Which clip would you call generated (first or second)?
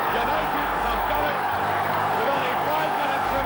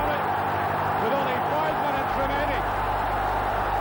first